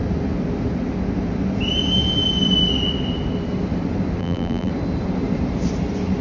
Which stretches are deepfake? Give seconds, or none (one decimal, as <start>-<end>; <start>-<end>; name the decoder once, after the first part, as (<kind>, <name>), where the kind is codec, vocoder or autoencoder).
4.2-4.7 (vocoder, BigVGAN v2)